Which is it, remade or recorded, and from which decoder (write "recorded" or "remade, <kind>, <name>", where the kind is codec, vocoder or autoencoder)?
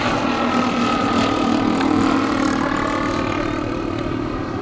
recorded